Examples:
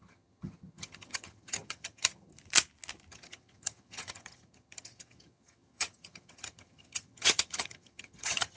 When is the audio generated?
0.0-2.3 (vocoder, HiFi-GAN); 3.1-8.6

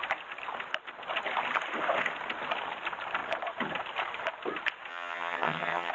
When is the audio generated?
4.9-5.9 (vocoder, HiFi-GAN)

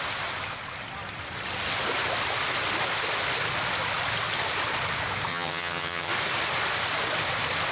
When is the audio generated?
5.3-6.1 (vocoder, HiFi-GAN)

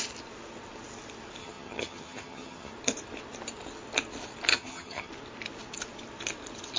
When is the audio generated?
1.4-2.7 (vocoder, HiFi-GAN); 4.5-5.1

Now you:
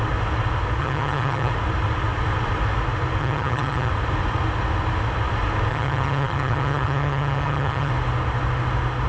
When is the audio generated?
0.8-1.5 (vocoder, HiFi-GAN); 3.2-3.9; 5.7-7.9